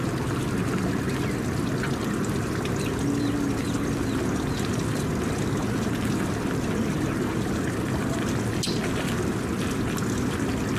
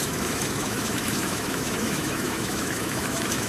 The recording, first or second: first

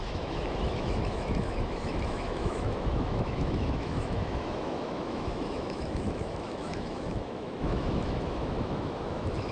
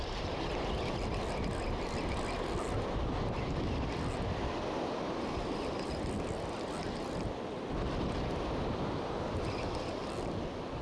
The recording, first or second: second